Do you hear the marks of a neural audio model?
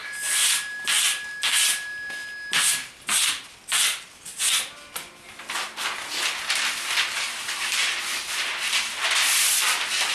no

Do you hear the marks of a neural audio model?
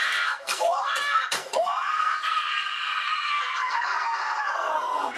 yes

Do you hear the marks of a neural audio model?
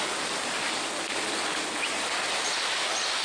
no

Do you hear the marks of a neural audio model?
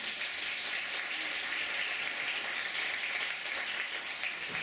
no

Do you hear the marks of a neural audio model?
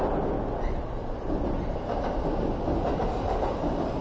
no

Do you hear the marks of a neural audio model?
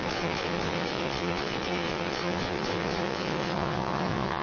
yes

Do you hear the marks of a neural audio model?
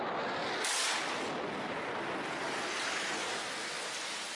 no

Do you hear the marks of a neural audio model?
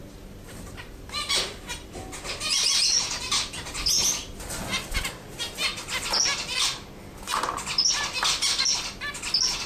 no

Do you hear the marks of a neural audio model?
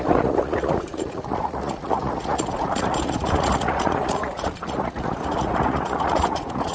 yes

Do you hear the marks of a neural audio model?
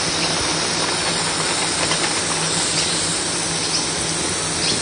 no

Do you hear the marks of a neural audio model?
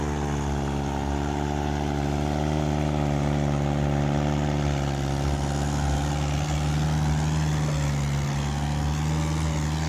no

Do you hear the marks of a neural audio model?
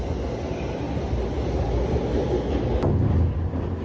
no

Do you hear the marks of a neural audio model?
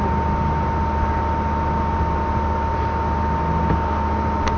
no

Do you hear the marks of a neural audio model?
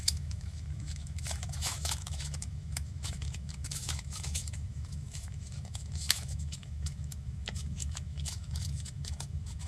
yes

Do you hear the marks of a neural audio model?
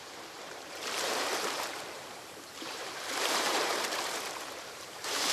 yes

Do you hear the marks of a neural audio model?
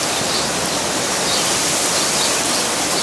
no